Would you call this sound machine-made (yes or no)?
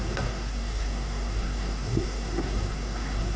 yes